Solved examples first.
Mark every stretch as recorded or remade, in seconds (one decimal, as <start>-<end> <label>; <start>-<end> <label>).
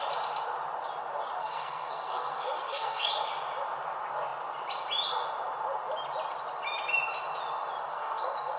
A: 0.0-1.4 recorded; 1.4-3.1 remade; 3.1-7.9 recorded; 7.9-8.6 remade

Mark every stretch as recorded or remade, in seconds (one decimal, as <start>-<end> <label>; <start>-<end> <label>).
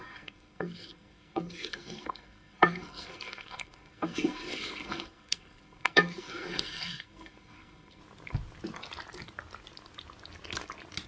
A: 0.0-8.0 remade; 8.0-11.1 recorded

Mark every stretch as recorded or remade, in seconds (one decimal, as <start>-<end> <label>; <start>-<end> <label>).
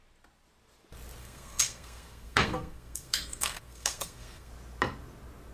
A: 0.0-1.2 recorded; 1.2-4.5 remade; 4.5-5.5 recorded